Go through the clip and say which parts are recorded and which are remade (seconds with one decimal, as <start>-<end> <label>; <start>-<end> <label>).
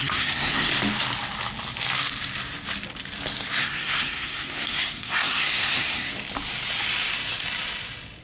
0.0-0.7 remade; 0.7-3.6 recorded; 3.6-6.1 remade; 6.1-8.2 recorded